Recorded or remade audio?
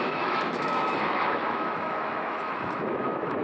remade